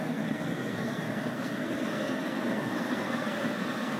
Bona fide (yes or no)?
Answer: no